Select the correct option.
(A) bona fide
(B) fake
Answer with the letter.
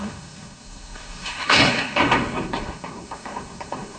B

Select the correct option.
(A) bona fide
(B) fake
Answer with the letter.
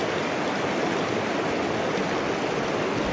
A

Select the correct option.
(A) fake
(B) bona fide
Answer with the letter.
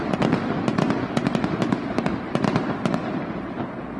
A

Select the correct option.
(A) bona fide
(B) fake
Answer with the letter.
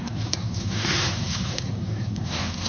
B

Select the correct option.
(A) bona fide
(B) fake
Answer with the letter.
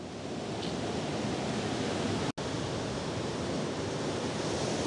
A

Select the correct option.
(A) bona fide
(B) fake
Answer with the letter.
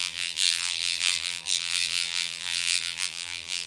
B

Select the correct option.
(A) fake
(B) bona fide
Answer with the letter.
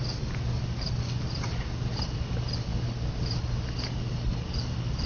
B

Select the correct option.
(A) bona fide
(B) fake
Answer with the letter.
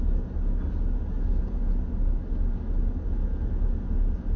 A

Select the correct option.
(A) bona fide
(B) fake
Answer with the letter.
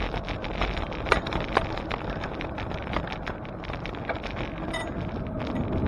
A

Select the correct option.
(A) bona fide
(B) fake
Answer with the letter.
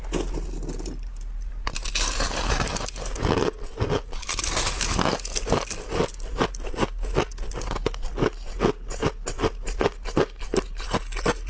A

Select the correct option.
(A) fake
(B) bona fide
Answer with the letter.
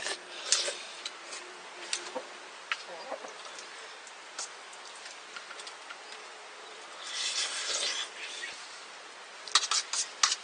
B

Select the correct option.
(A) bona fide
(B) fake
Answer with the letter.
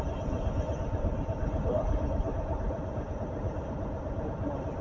A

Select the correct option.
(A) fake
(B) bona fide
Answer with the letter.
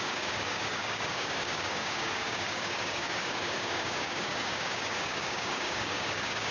A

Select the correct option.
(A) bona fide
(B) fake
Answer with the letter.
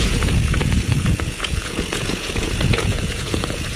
B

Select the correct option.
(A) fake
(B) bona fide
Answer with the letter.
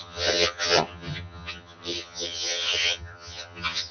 A